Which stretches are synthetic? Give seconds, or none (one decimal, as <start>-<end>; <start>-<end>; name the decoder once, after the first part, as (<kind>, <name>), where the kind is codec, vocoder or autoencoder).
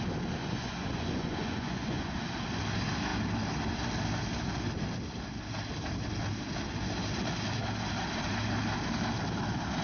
0.4-2.1 (vocoder, Vocos)